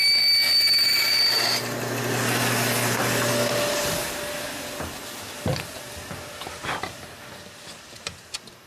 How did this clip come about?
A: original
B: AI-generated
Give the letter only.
A